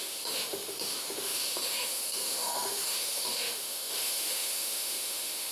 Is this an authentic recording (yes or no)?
no